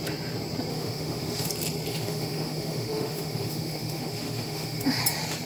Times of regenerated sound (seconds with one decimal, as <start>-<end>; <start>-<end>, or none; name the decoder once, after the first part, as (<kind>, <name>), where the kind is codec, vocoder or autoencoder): 0.7-1.5 (autoencoder, DAC-VAE); 1.9-5.0